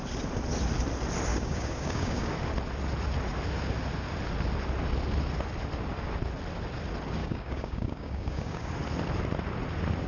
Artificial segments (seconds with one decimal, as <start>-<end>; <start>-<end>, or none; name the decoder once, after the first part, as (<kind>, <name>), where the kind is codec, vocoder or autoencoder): 1.3-2.3 (codec, DAC); 7.2-8.7